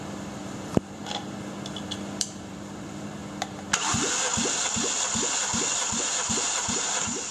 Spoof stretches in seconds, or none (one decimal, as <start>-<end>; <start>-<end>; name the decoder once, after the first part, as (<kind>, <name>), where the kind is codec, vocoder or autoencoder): 0.0-1.0 (vocoder, BigVGAN v2); 2.2-3.2; 6.0-7.3